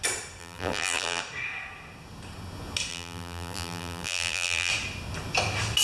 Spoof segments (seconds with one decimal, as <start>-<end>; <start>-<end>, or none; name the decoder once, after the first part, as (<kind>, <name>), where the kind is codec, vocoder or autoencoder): 0.4-1.2 (vocoder, BigVGAN v2); 2.9-4.7